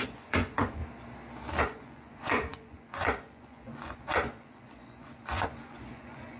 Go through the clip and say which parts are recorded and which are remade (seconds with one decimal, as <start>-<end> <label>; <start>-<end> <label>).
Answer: 0.0-0.8 remade; 0.8-1.6 recorded; 1.6-6.4 remade